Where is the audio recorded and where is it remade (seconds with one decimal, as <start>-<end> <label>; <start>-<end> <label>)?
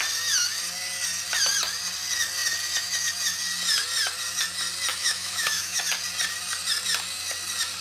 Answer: 0.0-4.9 recorded; 4.9-5.8 remade; 5.8-7.8 recorded